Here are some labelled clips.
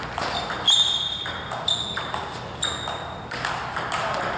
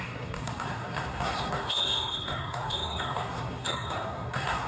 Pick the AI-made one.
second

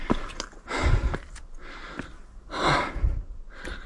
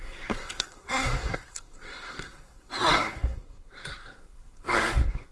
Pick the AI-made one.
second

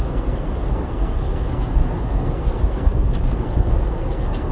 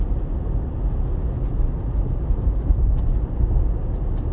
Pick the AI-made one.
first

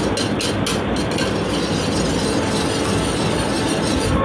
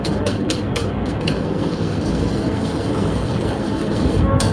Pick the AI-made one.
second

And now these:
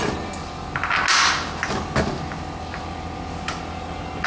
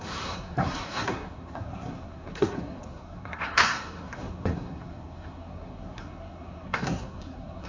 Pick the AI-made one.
second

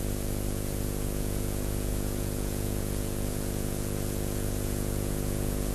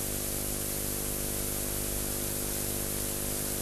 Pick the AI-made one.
first